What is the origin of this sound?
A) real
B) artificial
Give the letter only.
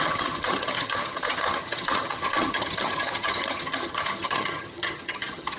B